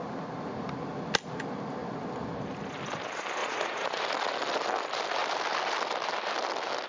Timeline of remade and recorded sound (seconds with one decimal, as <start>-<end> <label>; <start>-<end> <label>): 0.0-3.4 recorded; 3.4-4.0 remade; 4.0-6.9 recorded